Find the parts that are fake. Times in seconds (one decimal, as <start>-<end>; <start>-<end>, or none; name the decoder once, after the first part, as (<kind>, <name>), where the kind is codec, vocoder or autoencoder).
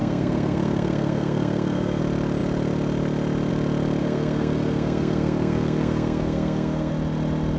0.0-2.0 (codec, SNAC); 4.0-6.9